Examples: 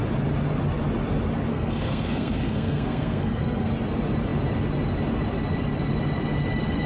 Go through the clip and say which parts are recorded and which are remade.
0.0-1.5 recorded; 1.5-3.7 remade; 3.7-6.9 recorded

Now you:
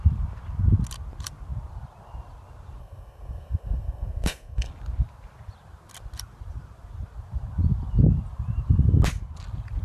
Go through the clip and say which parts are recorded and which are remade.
0.0-2.8 recorded; 2.8-4.7 remade; 4.7-9.8 recorded

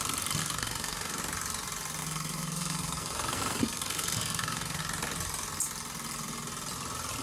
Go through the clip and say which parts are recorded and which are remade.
0.0-0.4 recorded; 0.4-1.2 remade; 1.2-2.0 recorded; 2.0-4.8 remade; 4.8-7.2 recorded

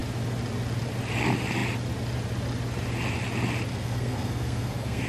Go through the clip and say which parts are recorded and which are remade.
0.0-3.7 recorded; 3.7-5.1 remade

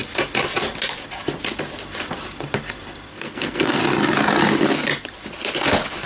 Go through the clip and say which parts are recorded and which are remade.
0.0-3.1 recorded; 3.1-3.8 remade; 3.8-6.1 recorded

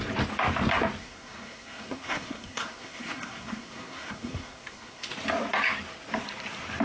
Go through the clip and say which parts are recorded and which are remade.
0.0-1.0 recorded; 1.0-5.1 remade; 5.1-6.8 recorded

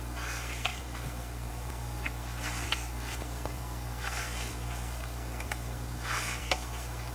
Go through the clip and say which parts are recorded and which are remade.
0.0-7.1 remade

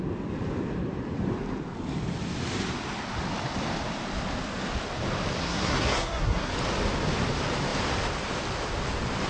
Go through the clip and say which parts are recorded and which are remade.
0.0-5.4 recorded; 5.4-6.5 remade; 6.5-9.3 recorded